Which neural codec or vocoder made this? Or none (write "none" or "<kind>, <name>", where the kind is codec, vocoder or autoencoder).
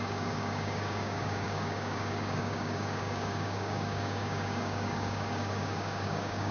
codec, DAC